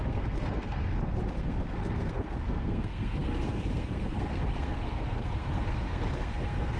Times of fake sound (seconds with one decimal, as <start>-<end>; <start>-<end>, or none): 0.0-6.8

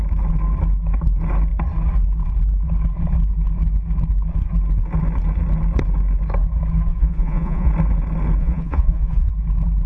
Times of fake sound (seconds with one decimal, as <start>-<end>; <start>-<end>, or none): 6.9-7.7; 8.4-9.3

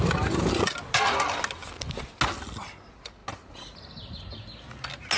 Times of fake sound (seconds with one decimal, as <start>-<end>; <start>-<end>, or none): none

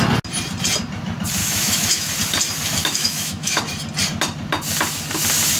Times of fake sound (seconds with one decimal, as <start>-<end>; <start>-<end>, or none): 1.4-2.1; 2.8-3.6

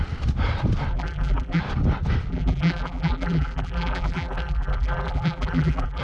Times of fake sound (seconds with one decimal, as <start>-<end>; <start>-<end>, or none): 0.9-1.6; 2.3-6.0

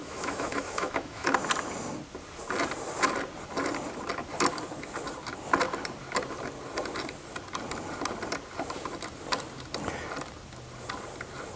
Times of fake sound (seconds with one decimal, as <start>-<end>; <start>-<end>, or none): 0.0-1.3